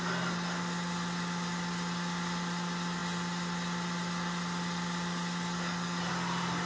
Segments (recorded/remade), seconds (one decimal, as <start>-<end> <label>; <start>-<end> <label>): 0.0-6.7 recorded